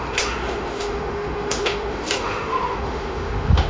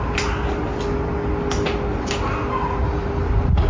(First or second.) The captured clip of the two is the second